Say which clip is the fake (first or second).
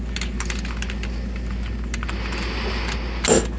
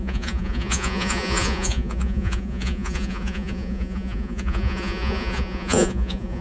second